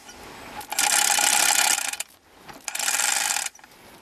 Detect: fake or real real